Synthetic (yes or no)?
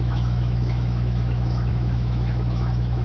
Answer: yes